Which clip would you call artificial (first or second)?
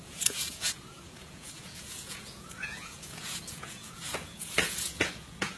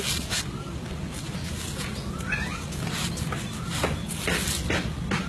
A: first